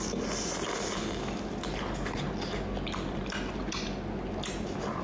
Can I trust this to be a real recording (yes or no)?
yes